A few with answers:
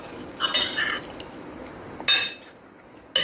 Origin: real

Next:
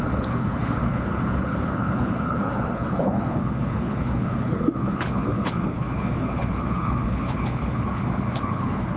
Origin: fake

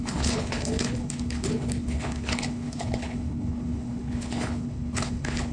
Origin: fake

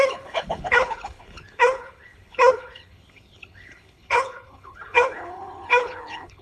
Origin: fake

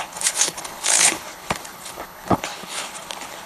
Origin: fake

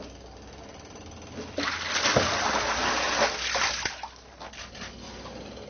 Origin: real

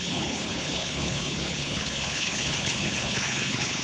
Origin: fake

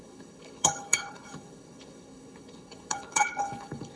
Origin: fake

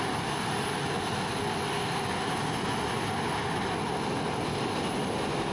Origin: real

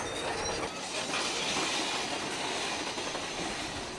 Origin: real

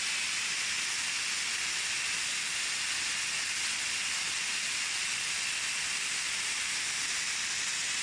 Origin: real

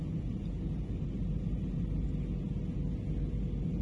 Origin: real